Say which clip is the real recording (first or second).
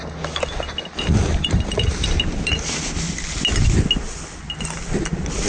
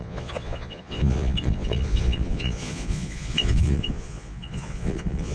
first